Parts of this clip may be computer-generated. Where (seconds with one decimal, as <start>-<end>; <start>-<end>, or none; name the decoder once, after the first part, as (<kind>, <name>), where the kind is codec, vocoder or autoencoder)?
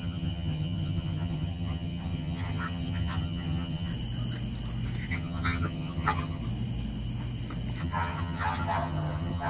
0.0-3.9 (vocoder, HiFi-GAN); 5.1-6.4; 7.8-9.5